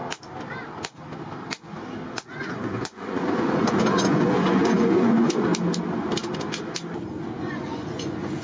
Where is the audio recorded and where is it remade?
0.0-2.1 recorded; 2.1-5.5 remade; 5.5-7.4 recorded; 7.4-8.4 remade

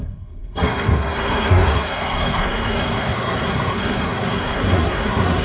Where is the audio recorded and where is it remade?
0.0-5.4 remade

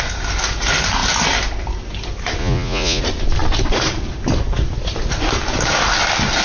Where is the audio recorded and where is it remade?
0.0-2.4 recorded; 2.4-3.0 remade; 3.0-6.4 recorded

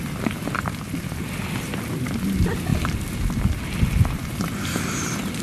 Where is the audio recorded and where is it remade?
0.0-5.4 recorded

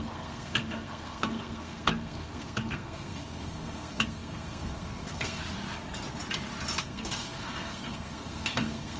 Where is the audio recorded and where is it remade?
0.0-5.4 remade; 5.4-6.8 recorded; 6.8-9.0 remade

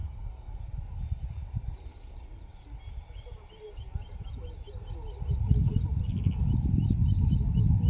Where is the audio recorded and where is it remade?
0.0-0.6 remade; 0.6-7.9 recorded

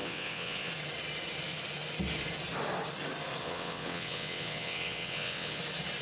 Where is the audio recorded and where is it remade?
0.0-0.7 remade; 0.7-3.4 recorded; 3.4-5.6 remade; 5.6-6.0 recorded

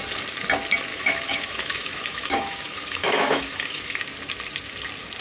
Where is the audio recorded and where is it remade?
0.0-0.9 recorded; 0.9-4.0 remade; 4.0-5.2 recorded